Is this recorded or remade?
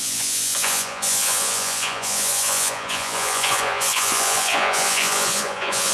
remade